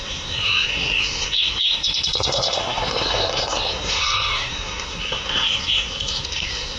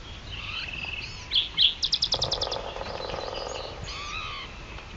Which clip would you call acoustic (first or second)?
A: second